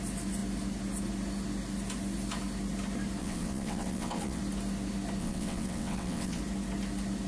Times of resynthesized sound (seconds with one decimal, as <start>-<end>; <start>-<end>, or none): 3.2-4.4; 5.2-6.4